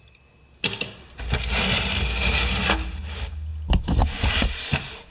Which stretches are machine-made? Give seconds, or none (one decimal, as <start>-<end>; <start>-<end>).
none